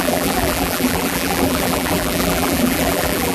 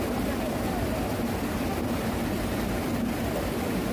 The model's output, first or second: first